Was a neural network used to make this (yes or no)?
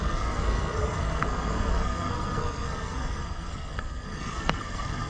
yes